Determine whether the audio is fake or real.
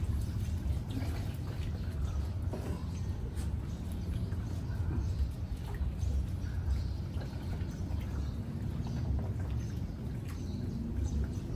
real